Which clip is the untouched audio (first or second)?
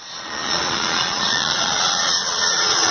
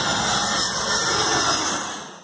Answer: second